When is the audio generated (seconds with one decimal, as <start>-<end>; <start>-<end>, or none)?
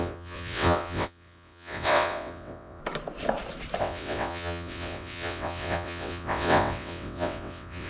0.0-2.8; 3.8-7.9